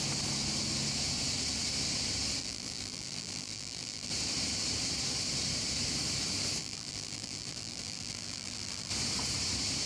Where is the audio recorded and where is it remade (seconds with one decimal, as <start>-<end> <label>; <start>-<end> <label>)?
0.0-2.4 recorded; 2.4-4.1 remade; 4.1-6.6 recorded; 6.6-8.9 remade; 8.9-9.9 recorded

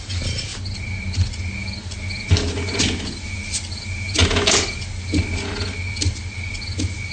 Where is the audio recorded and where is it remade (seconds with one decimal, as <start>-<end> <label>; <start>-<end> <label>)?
0.0-7.1 recorded